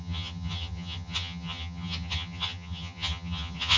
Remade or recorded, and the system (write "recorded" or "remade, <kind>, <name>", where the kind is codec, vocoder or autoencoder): remade, vocoder, HiFi-GAN